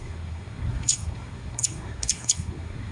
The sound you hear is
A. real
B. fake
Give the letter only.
B